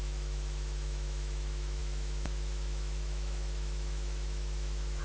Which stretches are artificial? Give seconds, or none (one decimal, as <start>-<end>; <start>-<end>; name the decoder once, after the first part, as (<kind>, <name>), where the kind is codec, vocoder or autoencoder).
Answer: 0.0-5.0 (autoencoder, DAC-VAE)